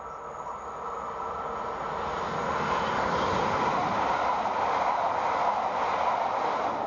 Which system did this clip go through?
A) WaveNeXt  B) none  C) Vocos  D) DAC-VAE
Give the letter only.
B